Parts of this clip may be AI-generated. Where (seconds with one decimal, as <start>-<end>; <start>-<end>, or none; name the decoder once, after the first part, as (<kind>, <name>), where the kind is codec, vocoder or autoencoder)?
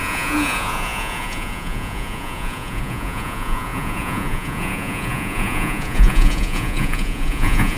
0.0-7.8 (vocoder, Vocos)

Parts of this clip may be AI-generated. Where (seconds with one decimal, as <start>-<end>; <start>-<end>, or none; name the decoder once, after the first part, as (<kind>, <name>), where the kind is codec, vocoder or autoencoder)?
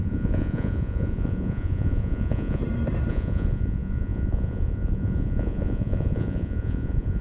0.0-2.6 (vocoder, Vocos); 3.1-7.2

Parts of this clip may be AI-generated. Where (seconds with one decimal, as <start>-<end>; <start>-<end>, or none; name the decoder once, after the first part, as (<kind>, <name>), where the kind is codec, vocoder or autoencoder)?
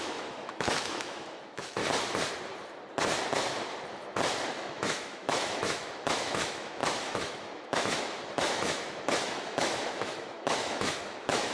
0.0-1.8 (autoencoder, DAC-VAE); 4.6-11.5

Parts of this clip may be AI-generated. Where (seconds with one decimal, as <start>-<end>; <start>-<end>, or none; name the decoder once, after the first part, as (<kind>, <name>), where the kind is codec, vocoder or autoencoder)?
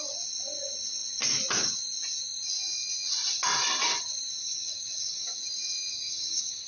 4.4-5.4 (codec, DAC); 5.9-6.7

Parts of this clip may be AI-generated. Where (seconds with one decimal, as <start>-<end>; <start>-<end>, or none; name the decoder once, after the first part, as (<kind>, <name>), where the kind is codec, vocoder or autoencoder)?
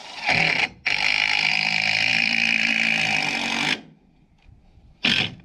0.0-1.5 (vocoder, BigVGAN v2); 2.1-2.7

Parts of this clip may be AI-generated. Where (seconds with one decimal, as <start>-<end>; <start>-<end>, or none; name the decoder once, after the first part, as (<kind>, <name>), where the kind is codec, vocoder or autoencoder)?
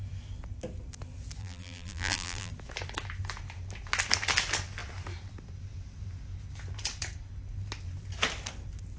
1.4-2.5 (vocoder, BigVGAN v2)